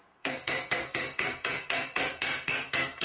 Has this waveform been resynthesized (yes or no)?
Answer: yes